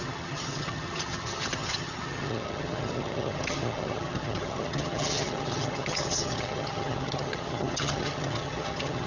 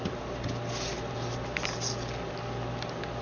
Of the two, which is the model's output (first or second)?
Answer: first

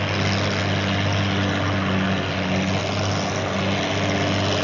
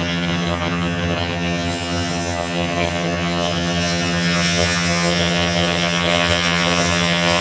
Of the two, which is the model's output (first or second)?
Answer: second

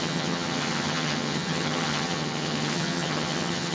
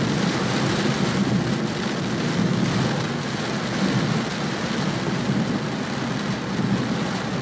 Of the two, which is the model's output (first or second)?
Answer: first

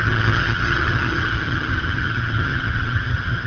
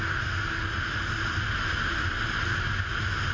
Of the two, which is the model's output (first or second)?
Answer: first